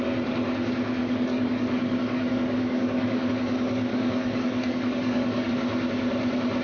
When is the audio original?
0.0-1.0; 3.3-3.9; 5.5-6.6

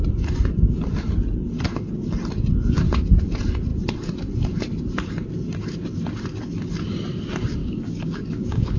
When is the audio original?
0.0-7.6

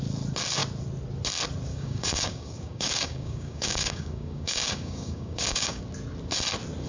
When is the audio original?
0.0-1.7; 5.8-6.9

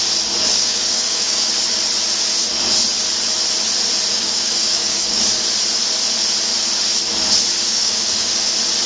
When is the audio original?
0.0-0.5; 1.5-4.1; 5.2-7.6; 8.3-8.9